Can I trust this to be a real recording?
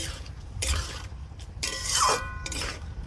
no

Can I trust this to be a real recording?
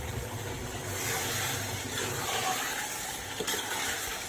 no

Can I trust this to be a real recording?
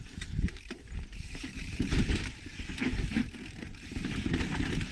no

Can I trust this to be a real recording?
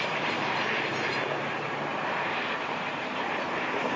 no